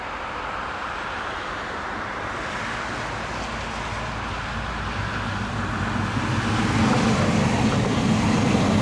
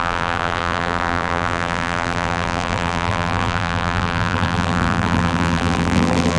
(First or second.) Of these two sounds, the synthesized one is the second